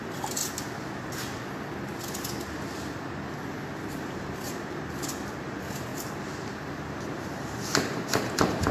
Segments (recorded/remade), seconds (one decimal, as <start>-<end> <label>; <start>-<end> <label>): 0.0-0.4 remade; 0.4-3.9 recorded; 3.9-5.9 remade; 5.9-7.1 recorded; 7.1-8.7 remade